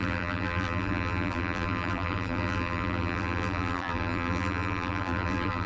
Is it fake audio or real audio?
fake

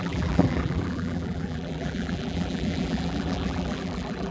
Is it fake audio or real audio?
fake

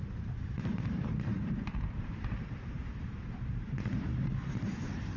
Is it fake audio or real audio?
fake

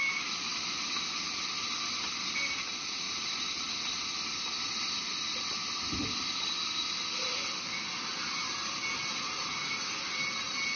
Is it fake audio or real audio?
real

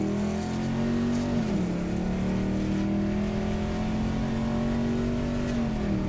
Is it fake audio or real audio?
real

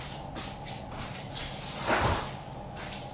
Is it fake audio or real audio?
real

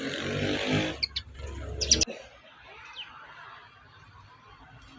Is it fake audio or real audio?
real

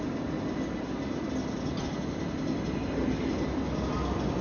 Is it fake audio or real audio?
real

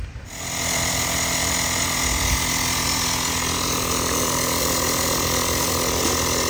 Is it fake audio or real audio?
real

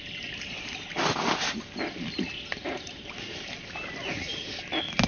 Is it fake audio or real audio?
real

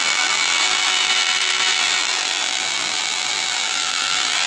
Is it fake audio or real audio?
fake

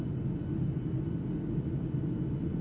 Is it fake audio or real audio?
real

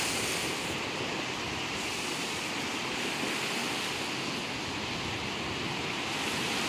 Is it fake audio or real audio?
real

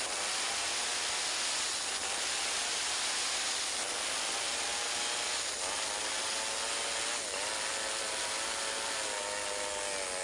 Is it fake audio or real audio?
real